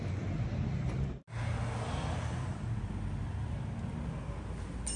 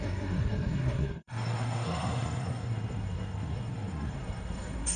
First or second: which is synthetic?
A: second